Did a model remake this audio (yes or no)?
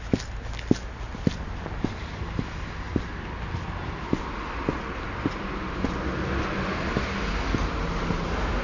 no